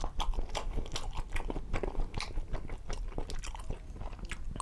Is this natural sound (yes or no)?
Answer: yes